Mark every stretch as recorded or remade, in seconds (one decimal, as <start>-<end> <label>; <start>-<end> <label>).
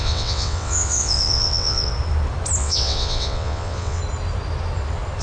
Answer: 0.0-1.9 remade; 1.9-2.6 recorded; 2.6-4.0 remade; 4.0-5.2 recorded